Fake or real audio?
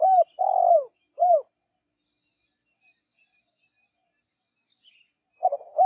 real